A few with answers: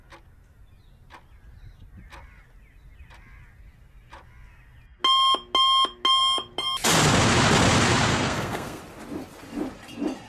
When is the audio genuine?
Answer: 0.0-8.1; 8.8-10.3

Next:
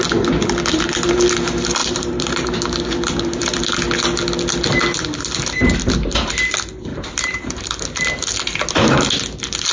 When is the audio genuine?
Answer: 0.0-1.8; 3.6-6.9; 7.8-9.7

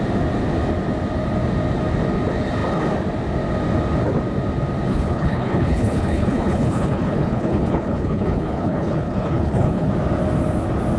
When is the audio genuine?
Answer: 0.0-4.9; 9.9-11.0